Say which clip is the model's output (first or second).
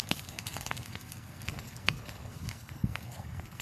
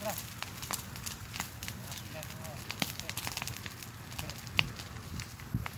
first